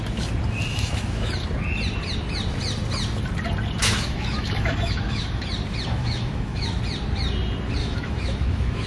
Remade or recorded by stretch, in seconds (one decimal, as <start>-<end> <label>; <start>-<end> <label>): 0.0-0.7 recorded; 0.7-1.3 remade; 1.3-3.8 recorded; 3.8-5.4 remade; 5.4-6.0 recorded; 6.0-6.8 remade; 6.8-7.8 recorded; 7.8-8.9 remade